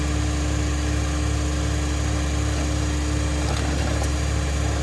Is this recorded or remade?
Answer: recorded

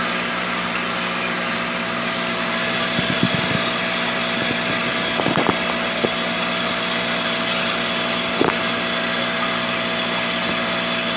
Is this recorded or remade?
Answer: recorded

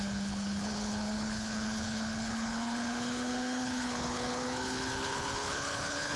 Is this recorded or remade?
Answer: remade